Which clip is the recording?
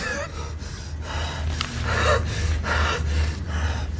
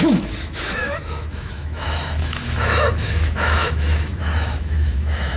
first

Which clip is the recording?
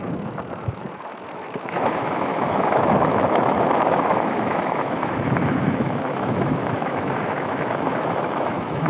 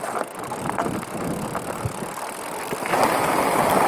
second